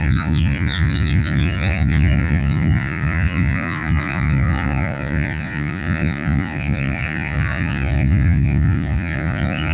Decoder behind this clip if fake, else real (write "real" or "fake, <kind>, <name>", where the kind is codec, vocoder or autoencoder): fake, vocoder, Vocos